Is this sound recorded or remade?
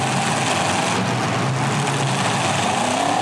recorded